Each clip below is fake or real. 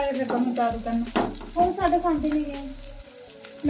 real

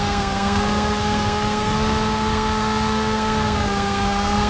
fake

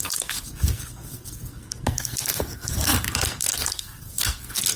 fake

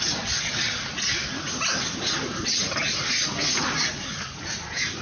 real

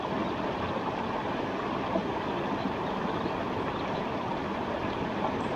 real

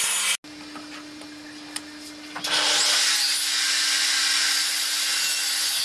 real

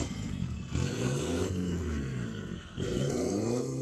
fake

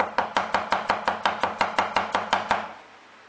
real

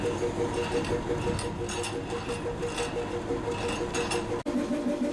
real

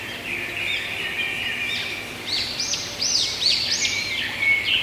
real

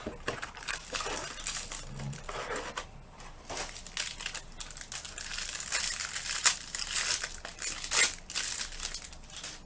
real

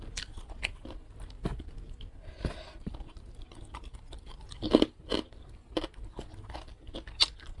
real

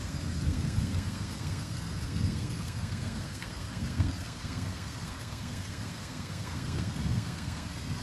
fake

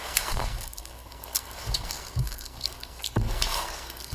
fake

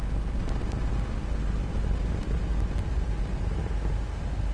real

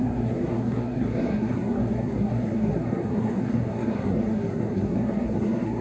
fake